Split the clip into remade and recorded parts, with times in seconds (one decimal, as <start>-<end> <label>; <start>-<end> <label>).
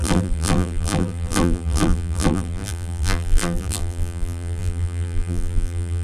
0.0-6.0 remade